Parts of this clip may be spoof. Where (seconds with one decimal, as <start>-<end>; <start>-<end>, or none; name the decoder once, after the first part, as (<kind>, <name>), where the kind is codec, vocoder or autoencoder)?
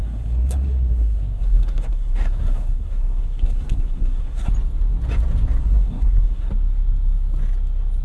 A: 0.0-4.5 (codec, SNAC); 5.6-6.5